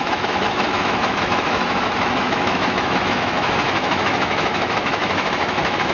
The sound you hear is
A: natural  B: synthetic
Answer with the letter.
B